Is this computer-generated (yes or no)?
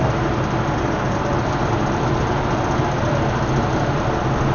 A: no